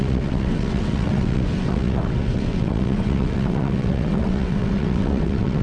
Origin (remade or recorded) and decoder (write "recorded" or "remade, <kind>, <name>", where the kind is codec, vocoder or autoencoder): remade, vocoder, WaveNeXt